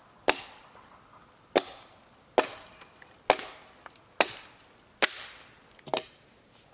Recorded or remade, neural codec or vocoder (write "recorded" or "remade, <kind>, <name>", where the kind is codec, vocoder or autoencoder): recorded